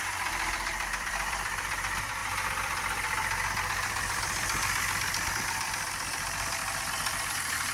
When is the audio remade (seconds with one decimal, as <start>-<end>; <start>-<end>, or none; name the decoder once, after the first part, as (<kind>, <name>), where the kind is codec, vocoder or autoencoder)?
0.0-6.6 (vocoder, BigVGAN v2); 7.3-7.7